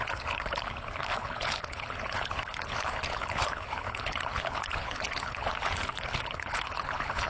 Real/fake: fake